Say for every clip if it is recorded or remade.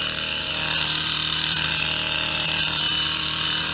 remade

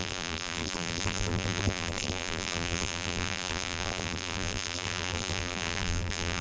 remade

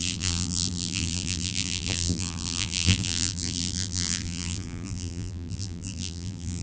remade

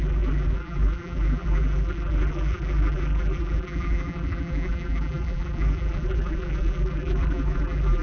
remade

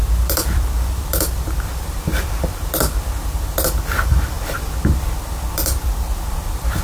remade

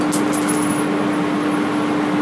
recorded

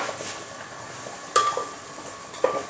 remade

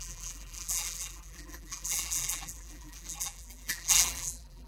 remade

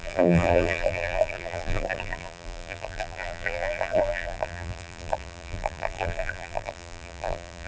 remade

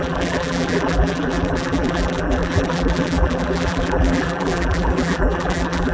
remade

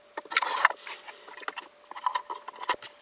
recorded